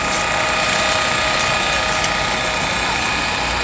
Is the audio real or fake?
real